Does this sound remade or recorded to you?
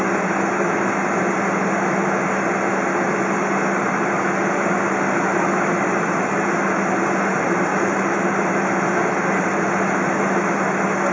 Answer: recorded